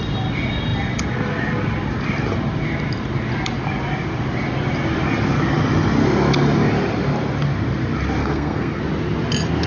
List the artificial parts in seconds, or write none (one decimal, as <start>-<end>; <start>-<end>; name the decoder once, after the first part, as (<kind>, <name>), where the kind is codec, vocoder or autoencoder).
8.2-8.8 (codec, SNAC)